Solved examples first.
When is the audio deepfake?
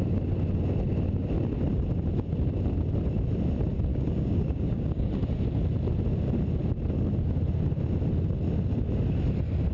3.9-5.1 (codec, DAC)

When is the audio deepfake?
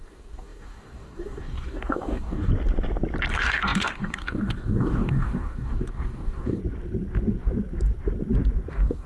0.0-2.5 (codec, DAC); 3.3-6.6; 8.7-9.1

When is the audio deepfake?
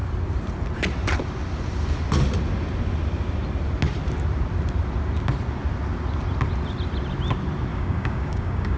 7.7-8.8 (codec, DAC)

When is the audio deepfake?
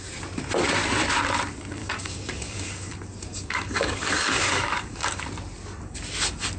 1.8-2.9 (codec, DAC); 3.3-5.2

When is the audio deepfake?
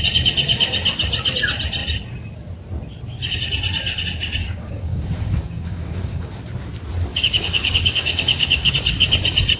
4.4-6.3 (codec, DAC); 7.1-8.7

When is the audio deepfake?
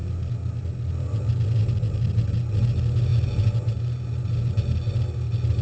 none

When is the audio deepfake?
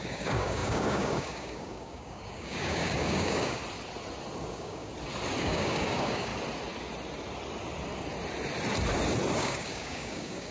0.0-3.6 (codec, DAC); 4.5-4.9; 5.4-6.3; 9.4-10.5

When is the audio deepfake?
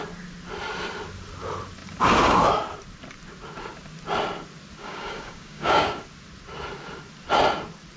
4.8-6.0 (codec, DAC)